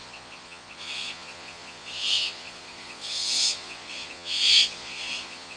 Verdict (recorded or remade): remade